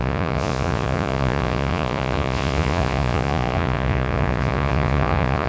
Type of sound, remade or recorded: remade